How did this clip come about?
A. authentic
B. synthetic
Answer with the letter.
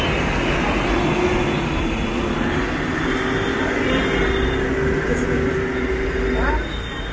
A